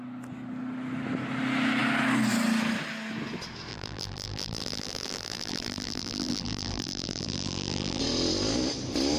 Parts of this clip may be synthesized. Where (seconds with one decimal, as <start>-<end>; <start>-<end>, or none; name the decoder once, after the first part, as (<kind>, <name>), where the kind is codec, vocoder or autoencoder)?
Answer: 3.7-8.0 (vocoder, BigVGAN v2)

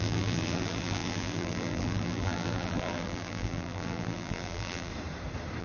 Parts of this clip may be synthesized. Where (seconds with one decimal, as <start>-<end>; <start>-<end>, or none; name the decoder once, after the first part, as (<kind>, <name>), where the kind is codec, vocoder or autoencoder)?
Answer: 0.0-4.9 (vocoder, BigVGAN v2)

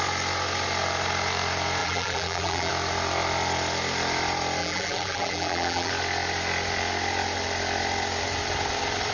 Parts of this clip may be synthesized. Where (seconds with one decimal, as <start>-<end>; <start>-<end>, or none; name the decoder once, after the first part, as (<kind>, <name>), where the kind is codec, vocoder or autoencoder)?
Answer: 1.8-2.7 (vocoder, BigVGAN v2); 4.6-5.9

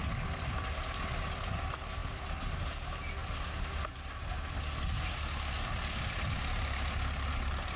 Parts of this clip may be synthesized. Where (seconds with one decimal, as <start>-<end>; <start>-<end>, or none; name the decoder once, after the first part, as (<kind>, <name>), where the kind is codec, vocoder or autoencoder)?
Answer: none

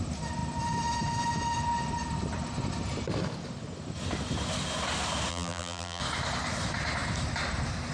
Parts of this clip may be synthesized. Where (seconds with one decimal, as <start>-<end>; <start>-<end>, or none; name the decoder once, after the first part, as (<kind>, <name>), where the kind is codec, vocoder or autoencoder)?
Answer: 5.3-6.0 (vocoder, BigVGAN v2)

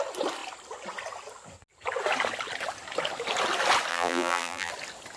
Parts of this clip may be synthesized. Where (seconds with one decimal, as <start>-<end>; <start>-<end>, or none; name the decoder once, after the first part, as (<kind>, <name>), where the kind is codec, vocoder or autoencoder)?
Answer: 3.9-4.7 (vocoder, BigVGAN v2)